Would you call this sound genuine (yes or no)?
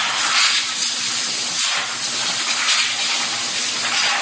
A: yes